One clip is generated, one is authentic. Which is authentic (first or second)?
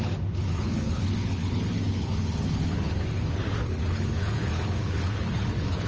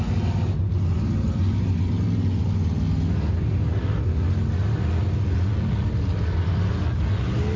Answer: second